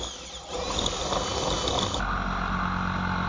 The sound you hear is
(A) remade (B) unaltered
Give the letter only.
B